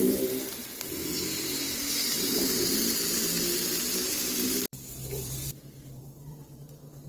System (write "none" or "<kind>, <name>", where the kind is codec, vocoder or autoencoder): vocoder, BigVGAN v2